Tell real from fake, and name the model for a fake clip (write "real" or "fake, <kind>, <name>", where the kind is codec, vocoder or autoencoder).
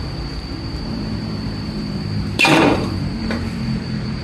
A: fake, vocoder, BigVGAN v2